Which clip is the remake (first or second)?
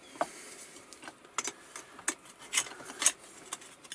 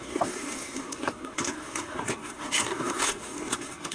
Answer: second